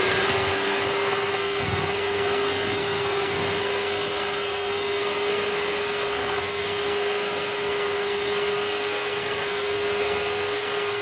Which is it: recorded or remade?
remade